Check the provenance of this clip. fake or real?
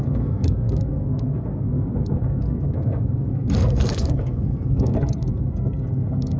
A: fake